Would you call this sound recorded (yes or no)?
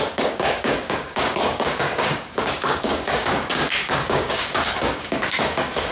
no